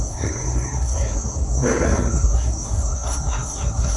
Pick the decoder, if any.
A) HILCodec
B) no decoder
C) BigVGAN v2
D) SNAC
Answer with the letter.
D